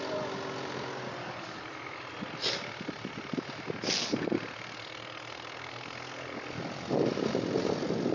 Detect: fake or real real